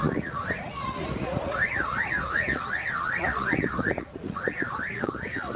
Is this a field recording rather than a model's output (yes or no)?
no